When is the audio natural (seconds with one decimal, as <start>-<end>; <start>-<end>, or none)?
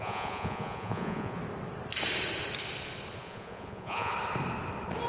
1.4-3.2; 4.1-5.1